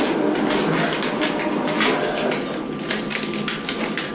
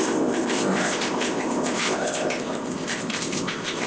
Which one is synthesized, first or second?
second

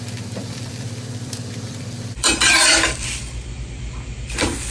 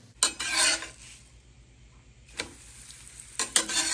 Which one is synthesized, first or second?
first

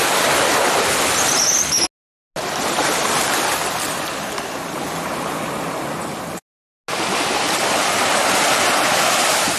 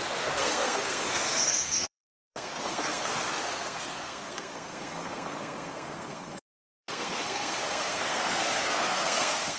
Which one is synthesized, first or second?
second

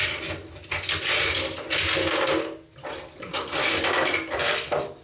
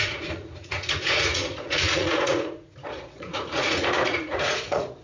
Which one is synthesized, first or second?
second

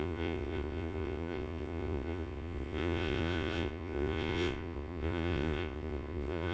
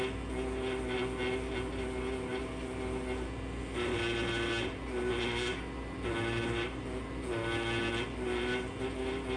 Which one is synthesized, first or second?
first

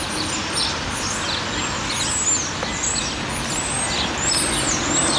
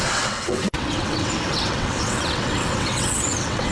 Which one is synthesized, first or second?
second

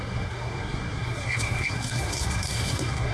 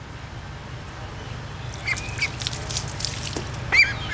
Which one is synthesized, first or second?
first